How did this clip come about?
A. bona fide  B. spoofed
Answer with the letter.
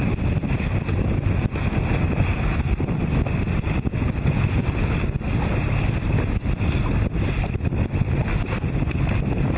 A